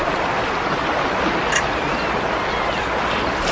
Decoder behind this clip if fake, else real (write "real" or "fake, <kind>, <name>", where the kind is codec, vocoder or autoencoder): real